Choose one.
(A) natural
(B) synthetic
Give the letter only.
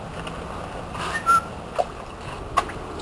A